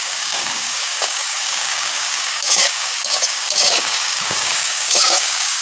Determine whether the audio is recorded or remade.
remade